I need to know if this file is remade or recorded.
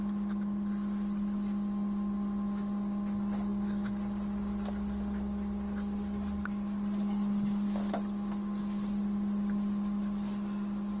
recorded